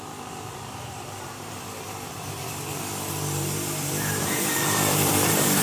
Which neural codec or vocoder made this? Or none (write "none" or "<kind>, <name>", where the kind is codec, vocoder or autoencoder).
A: vocoder, BigVGAN v2